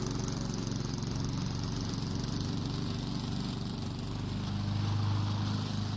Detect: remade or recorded recorded